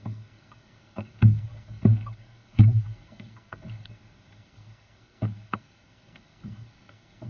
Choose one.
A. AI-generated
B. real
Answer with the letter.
A